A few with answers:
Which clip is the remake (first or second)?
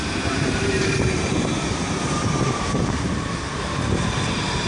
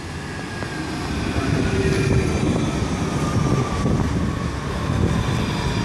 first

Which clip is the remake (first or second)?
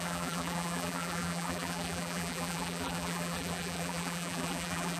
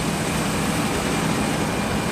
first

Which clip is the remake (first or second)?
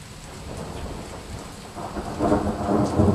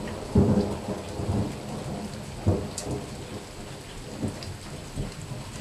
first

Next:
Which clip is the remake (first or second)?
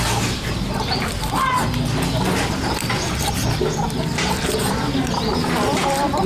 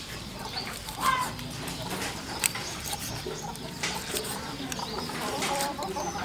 second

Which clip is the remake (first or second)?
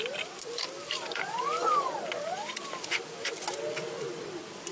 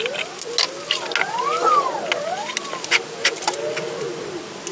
first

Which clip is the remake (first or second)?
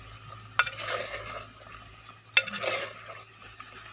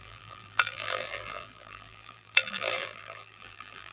second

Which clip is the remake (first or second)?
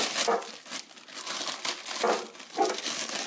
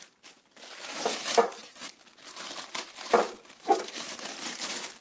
second